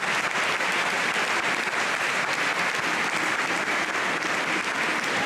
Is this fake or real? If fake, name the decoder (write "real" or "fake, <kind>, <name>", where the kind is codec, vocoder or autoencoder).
real